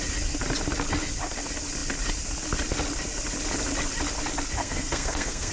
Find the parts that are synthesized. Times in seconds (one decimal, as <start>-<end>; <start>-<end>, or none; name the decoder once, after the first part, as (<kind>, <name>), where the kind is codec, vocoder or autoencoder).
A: 4.6-5.5 (codec, SNAC)